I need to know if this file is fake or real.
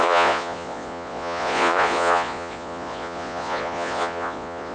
fake